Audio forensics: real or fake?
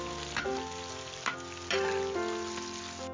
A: real